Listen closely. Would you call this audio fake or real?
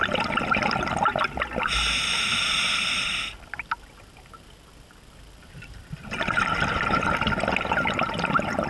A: real